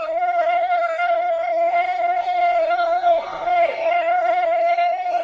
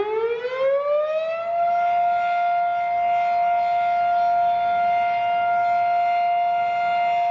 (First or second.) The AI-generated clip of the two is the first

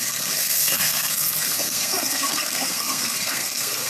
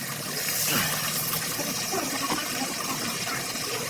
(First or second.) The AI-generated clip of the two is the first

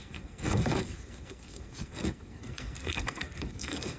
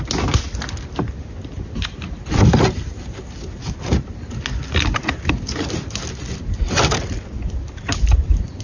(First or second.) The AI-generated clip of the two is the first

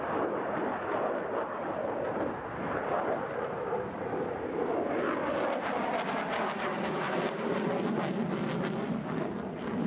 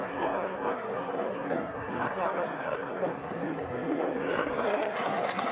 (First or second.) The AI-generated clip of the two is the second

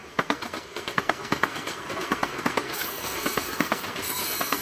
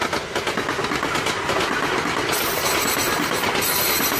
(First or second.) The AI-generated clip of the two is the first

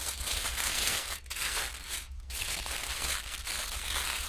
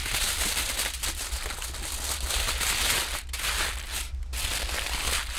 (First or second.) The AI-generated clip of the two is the first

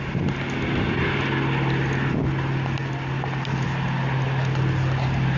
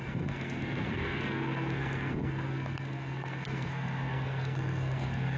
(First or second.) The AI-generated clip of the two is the second